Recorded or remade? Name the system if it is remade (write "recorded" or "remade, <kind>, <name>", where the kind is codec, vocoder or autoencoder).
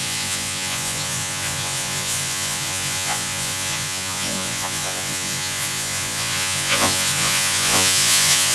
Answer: remade, vocoder, Vocos